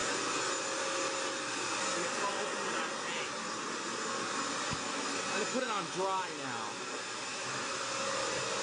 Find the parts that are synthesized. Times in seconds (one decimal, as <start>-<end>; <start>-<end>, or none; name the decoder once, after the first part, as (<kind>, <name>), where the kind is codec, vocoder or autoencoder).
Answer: 5.5-6.0 (autoencoder, DAC-VAE); 7.3-7.8